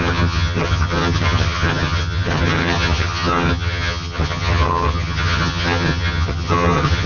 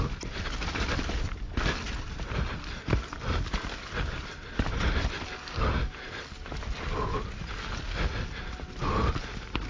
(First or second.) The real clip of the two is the second